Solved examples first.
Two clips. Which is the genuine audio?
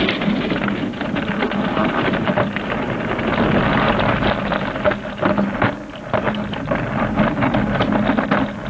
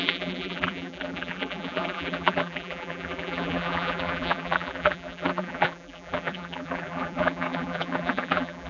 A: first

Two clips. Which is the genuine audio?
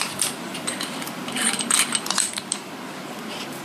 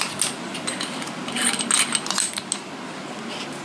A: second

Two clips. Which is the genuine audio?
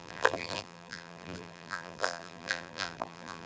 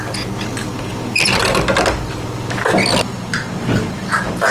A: second